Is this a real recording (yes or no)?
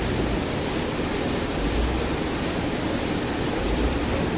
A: yes